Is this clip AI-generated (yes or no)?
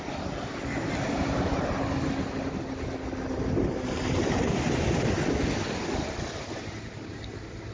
no